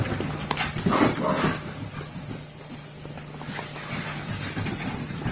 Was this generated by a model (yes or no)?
yes